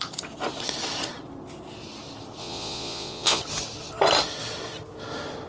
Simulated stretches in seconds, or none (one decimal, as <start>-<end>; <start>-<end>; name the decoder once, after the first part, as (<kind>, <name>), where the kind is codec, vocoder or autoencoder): 2.4-3.4 (vocoder, Vocos)